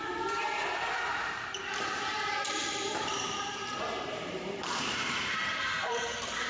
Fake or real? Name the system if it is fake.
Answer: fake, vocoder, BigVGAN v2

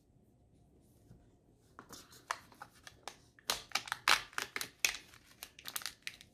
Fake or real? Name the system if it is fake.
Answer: real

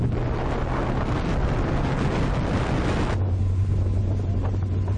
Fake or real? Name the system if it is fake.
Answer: real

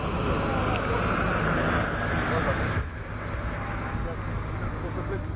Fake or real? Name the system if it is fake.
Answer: real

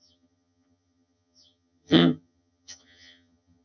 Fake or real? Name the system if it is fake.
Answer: fake, vocoder, HiFi-GAN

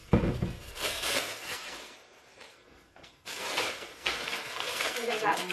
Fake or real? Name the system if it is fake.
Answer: fake, codec, SNAC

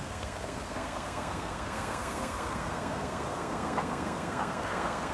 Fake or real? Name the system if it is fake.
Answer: fake, codec, SNAC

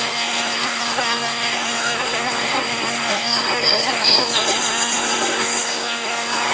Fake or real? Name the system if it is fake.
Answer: fake, codec, SNAC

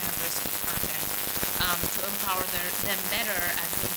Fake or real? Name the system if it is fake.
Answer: real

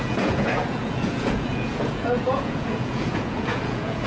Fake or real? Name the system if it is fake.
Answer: fake, vocoder, Vocos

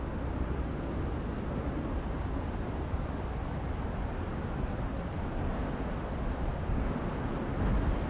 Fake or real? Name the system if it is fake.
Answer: real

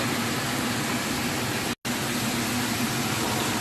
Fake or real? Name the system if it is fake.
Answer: real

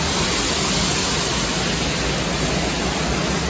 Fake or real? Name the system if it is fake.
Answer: real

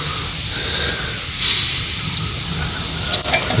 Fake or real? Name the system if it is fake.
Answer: real